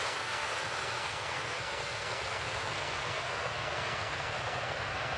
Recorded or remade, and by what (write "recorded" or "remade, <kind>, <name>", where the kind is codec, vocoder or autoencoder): remade, codec, SNAC